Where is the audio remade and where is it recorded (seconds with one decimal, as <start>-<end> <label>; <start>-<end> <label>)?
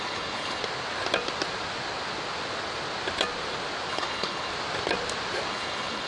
0.0-0.6 remade; 0.6-3.9 recorded; 3.9-4.5 remade; 4.5-5.5 recorded; 5.5-6.1 remade